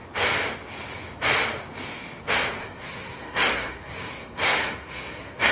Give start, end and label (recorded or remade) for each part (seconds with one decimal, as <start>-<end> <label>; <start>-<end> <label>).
0.0-2.6 recorded; 2.6-5.5 remade